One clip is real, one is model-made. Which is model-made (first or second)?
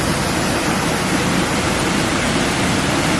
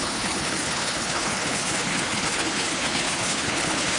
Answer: second